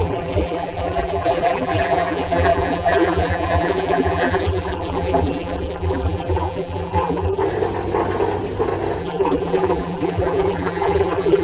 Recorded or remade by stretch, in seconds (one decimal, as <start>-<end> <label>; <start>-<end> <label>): 0.0-7.4 remade; 7.4-9.0 recorded; 9.0-11.4 remade